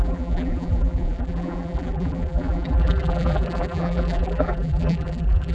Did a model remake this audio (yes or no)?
yes